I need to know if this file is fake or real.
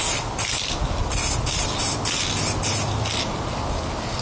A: real